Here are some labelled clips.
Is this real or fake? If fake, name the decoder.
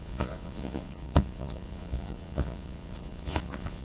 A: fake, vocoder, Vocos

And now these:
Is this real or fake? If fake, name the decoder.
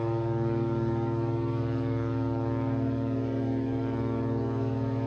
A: fake, codec, DAC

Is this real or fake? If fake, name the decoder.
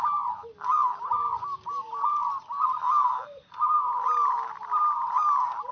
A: fake, vocoder, BigVGAN v2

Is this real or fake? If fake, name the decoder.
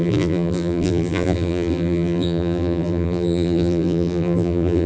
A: fake, vocoder, BigVGAN v2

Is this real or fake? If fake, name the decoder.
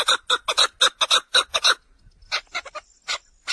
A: real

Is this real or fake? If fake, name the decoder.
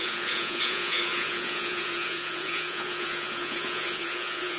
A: fake, vocoder, Vocos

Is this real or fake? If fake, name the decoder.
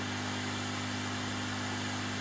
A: real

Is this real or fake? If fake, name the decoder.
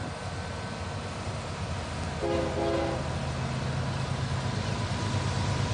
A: real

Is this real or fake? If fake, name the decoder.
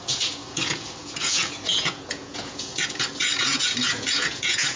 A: fake, vocoder, Vocos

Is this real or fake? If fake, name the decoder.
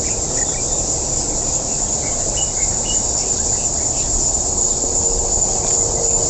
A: real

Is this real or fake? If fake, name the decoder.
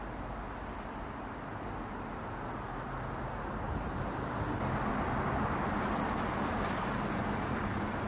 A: real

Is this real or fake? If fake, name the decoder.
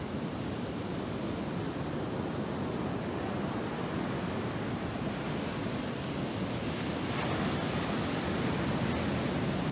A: real